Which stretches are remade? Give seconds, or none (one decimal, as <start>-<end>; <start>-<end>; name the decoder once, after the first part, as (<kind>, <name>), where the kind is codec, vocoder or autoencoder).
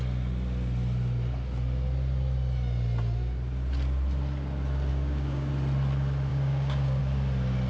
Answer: 4.9-5.5 (codec, DAC); 6.3-7.0